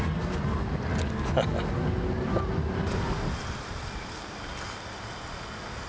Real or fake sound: real